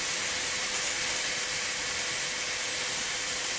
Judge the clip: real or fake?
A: real